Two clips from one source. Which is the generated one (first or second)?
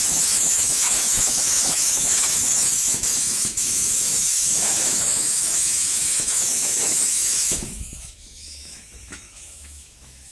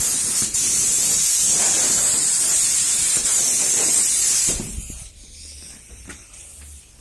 first